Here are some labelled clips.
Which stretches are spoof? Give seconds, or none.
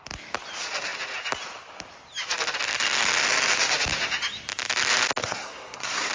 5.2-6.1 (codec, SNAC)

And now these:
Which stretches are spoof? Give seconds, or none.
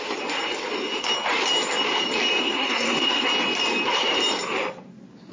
2.4-3.3 (codec, SNAC)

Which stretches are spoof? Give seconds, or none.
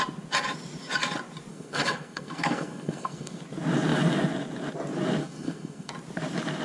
1.5-3.4 (codec, SNAC); 5.2-5.9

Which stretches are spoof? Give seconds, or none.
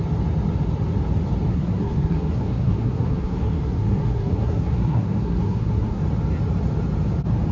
1.5-6.0 (codec, SNAC)